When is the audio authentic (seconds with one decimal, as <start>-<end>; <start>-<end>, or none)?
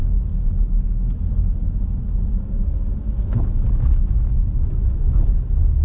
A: 0.0-5.8